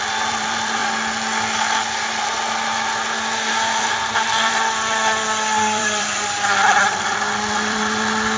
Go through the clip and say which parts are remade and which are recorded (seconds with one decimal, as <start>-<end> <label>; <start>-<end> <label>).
0.0-0.8 remade; 0.8-3.9 recorded; 3.9-8.4 remade